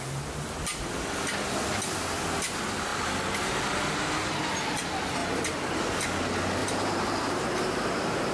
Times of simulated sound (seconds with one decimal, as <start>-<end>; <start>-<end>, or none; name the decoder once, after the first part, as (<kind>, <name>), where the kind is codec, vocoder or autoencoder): 6.6-7.9 (vocoder, BigVGAN v2)

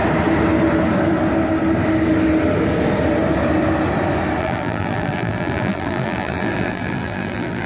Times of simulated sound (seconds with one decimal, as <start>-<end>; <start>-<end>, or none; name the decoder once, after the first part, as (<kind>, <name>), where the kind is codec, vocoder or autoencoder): 4.4-7.7 (vocoder, BigVGAN v2)

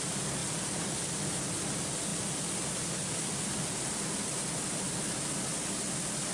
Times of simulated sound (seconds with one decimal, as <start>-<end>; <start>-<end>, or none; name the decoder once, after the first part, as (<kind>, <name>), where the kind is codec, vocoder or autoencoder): none